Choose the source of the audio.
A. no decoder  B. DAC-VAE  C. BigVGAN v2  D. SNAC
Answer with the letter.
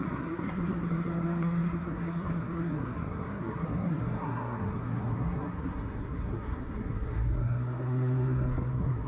D